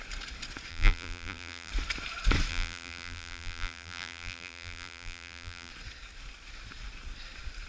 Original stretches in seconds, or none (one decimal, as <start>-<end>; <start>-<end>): 0.0-0.7; 1.7-2.5; 5.7-7.7